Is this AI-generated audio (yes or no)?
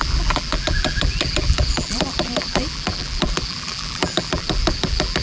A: yes